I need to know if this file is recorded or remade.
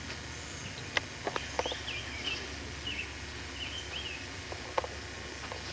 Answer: recorded